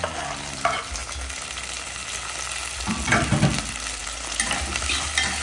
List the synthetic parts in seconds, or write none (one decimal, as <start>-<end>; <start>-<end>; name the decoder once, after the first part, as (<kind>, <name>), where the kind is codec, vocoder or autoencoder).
4.0-4.7 (vocoder, BigVGAN v2)